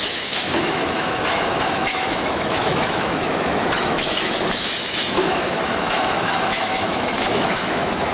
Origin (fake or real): fake